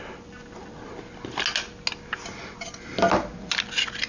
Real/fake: real